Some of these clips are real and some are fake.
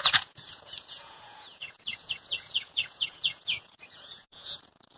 fake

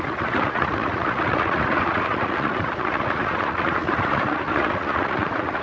fake